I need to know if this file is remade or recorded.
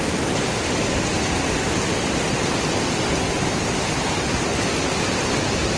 recorded